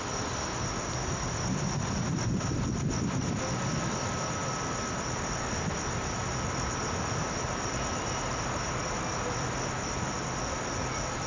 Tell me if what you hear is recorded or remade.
recorded